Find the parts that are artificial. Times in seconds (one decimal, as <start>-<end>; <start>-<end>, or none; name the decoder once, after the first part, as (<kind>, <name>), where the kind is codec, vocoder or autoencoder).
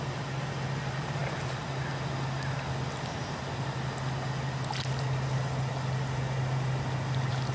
none